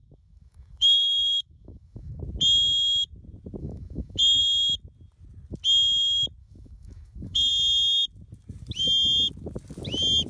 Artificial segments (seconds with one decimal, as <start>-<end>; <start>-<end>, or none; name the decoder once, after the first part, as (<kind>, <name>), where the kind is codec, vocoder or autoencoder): 0.0-2.2 (autoencoder, DAC-VAE); 3.6-4.4; 6.4-7.5